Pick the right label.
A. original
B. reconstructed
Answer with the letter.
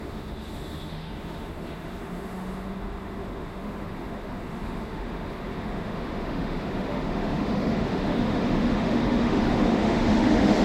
B